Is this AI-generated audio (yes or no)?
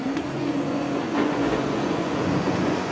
yes